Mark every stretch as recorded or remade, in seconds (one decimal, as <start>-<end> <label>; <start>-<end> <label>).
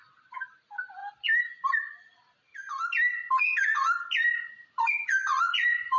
0.0-5.3 recorded; 5.3-6.0 remade